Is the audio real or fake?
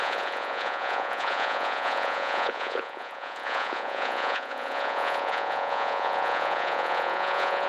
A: fake